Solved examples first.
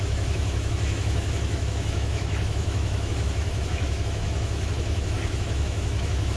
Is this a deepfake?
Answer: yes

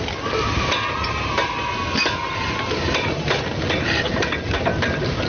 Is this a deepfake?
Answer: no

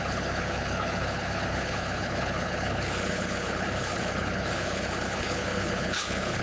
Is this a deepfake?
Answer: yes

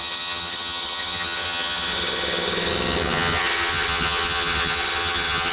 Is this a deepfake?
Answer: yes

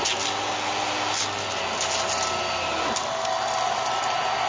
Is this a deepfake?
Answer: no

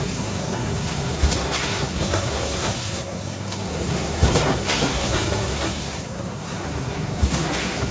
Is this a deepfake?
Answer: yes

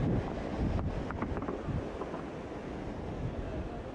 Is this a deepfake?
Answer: no